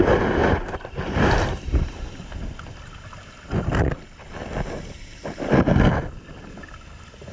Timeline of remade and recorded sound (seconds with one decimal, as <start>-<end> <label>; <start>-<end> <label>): 0.0-0.4 recorded; 0.4-2.1 remade; 2.1-7.3 recorded